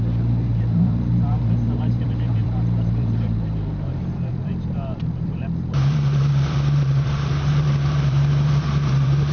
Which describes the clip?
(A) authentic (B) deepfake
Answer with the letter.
B